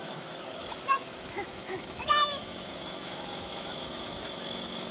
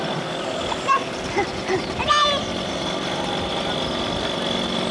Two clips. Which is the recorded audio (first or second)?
second